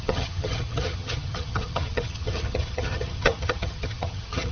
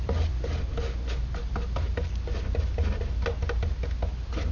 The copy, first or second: first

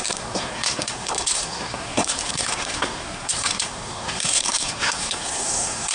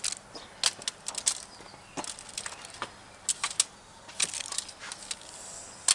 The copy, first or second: first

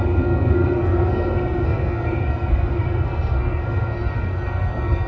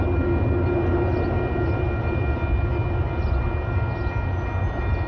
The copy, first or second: first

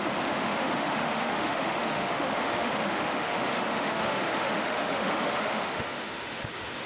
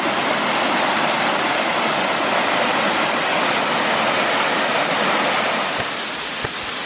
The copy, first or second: first